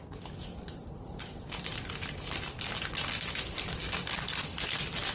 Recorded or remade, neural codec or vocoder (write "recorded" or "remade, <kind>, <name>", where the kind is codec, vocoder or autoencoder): recorded